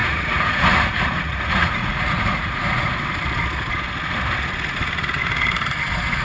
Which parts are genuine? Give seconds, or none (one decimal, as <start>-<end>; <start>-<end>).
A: 2.9-6.2